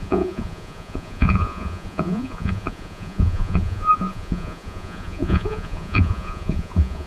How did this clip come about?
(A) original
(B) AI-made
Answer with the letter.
B